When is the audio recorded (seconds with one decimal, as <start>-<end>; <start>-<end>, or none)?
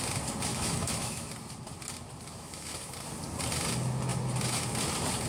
0.0-0.5; 1.3-2.3; 2.9-5.3